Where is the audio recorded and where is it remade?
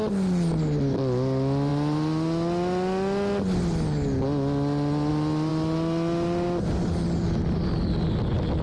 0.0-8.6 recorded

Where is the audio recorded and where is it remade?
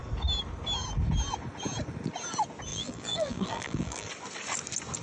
0.0-2.7 recorded; 2.7-4.1 remade; 4.1-5.0 recorded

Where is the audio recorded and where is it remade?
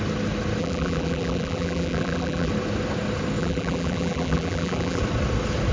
0.0-0.6 recorded; 0.6-2.5 remade; 2.5-3.4 recorded; 3.4-5.0 remade; 5.0-5.7 recorded